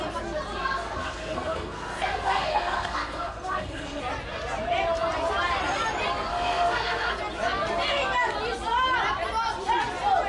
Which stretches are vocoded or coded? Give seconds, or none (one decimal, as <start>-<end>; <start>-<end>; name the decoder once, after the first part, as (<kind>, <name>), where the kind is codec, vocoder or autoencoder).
0.6-4.0 (codec, SNAC); 6.3-7.2